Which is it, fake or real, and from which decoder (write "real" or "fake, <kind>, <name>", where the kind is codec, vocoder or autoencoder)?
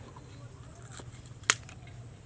real